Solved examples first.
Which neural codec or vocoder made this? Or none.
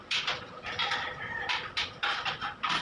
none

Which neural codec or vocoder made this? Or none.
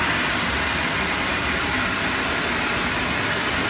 none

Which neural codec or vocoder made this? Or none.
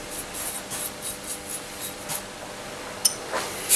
none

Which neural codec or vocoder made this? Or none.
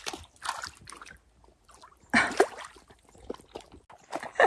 none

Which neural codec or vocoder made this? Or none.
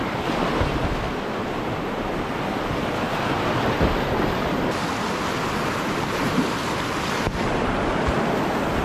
none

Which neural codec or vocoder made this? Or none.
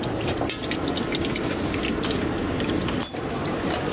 none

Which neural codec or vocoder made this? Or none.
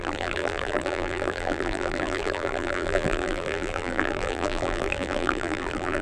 vocoder, BigVGAN v2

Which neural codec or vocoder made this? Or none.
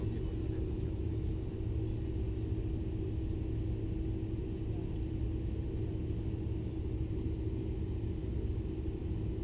none